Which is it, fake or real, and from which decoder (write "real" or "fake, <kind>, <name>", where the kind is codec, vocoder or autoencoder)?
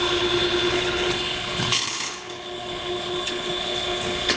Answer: fake, codec, HILCodec